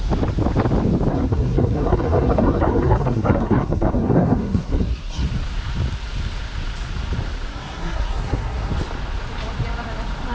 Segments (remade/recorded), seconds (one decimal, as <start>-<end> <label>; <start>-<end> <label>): 0.0-1.1 recorded; 1.1-5.3 remade; 5.3-7.5 recorded; 7.5-8.7 remade; 8.7-10.3 recorded